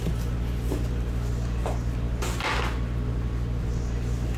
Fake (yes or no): no